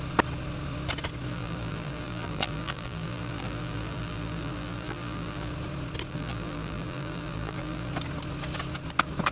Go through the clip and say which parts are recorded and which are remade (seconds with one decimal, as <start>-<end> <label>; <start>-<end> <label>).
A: 0.0-1.3 recorded; 1.3-5.5 remade; 5.5-6.1 recorded; 6.1-7.9 remade; 7.9-9.3 recorded